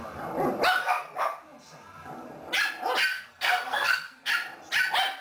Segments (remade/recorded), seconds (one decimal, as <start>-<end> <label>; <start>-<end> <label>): 0.0-0.8 recorded; 0.8-1.4 remade; 1.4-3.1 recorded; 3.1-4.3 remade; 4.3-5.2 recorded